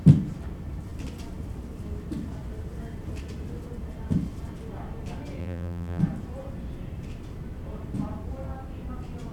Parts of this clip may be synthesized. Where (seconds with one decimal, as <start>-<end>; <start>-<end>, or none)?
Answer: 5.4-6.0